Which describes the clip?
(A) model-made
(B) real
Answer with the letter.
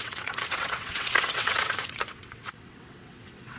A